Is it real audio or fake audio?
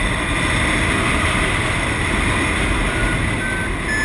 real